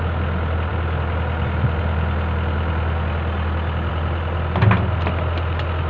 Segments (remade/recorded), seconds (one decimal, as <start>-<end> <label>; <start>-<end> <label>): 0.0-5.9 recorded